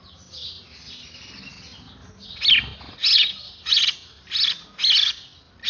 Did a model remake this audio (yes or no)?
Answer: no